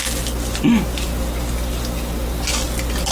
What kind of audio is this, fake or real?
real